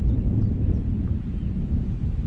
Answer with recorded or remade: recorded